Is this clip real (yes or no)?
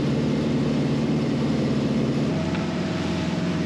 no